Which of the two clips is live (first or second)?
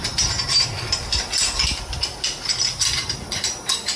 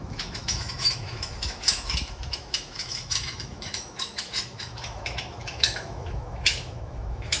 first